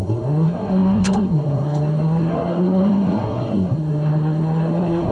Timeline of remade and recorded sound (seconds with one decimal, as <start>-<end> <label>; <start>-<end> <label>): 0.0-5.1 remade

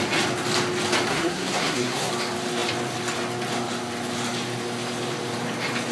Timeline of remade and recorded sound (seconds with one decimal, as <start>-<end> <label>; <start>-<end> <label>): 0.0-1.1 recorded; 1.1-2.1 remade; 2.1-5.9 recorded

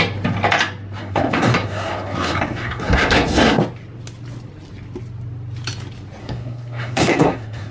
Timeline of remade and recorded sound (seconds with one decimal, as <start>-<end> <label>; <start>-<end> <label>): 0.0-1.0 recorded; 1.0-3.6 remade; 3.6-6.2 recorded; 6.2-7.7 remade

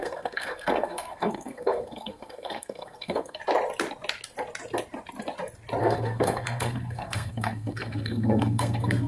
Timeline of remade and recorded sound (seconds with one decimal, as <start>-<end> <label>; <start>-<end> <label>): 0.0-3.4 remade; 3.4-5.8 recorded; 5.8-9.1 remade